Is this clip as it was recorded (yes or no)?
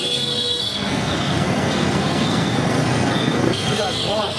no